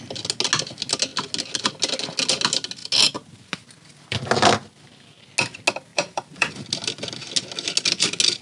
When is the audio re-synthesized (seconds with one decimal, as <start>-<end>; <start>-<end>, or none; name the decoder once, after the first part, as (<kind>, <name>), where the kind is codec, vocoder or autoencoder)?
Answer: 5.9-6.5 (vocoder, BigVGAN v2)

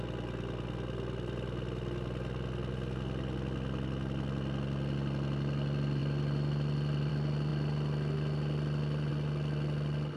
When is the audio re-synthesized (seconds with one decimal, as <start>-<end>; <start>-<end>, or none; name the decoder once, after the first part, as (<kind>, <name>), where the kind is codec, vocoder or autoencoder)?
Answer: 6.0-7.1 (vocoder, BigVGAN v2)

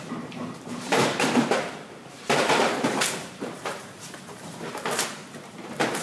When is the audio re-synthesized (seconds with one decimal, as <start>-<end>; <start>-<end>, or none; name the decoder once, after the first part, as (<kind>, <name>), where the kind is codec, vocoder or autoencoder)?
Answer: 0.0-5.2 (vocoder, BigVGAN v2)

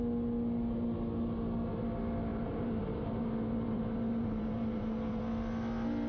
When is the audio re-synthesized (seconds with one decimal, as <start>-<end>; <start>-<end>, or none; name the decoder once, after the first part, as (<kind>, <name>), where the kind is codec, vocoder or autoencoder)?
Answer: 2.3-5.2 (vocoder, BigVGAN v2)

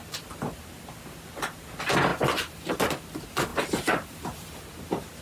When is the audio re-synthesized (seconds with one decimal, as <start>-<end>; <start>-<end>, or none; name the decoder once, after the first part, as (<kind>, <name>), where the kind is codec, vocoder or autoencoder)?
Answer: 3.5-4.7 (vocoder, BigVGAN v2)